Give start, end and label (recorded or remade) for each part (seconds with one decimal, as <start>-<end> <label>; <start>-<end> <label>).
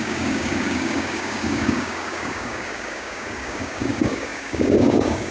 0.0-5.3 remade